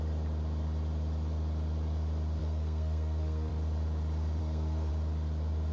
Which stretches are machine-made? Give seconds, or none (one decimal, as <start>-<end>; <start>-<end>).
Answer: 2.4-3.5; 4.4-4.9